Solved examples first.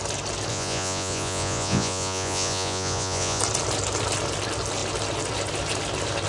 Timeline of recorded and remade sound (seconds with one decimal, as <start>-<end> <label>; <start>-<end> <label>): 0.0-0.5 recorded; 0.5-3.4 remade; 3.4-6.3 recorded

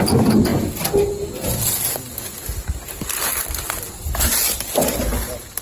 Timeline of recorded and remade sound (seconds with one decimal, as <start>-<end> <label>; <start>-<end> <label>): 0.0-5.6 recorded

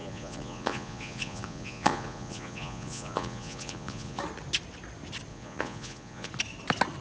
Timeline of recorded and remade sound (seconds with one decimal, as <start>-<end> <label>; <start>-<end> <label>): 0.0-4.2 remade; 4.2-5.3 recorded; 5.3-6.3 remade; 6.3-7.0 recorded